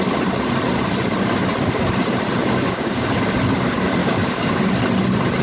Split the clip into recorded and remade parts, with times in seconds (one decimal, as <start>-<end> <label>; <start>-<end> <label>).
0.0-2.4 recorded; 2.4-3.2 remade; 3.2-4.0 recorded; 4.0-4.6 remade; 4.6-5.4 recorded